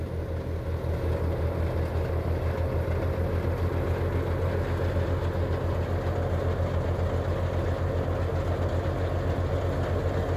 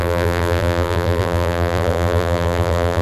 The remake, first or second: second